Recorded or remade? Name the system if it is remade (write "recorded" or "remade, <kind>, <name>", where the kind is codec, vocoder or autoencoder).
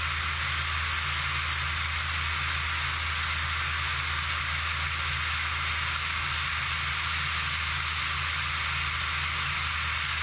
recorded